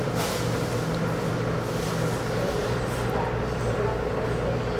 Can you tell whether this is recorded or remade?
recorded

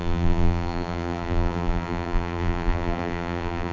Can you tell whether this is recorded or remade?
remade